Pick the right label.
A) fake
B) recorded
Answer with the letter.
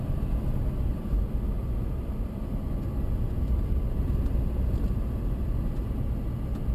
B